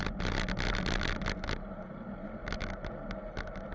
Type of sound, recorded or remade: recorded